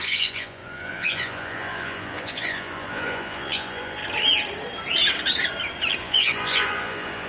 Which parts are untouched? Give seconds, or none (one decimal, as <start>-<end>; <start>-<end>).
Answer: 4.0-6.0